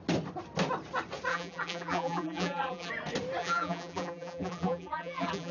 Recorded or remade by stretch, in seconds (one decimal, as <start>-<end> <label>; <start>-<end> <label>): 0.0-1.3 recorded; 1.3-2.9 remade; 2.9-3.4 recorded; 3.4-5.5 remade